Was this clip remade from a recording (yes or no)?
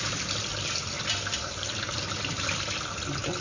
no